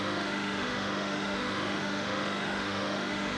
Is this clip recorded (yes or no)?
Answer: no